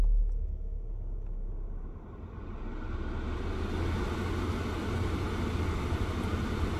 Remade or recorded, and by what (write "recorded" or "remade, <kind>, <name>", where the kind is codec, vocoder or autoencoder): recorded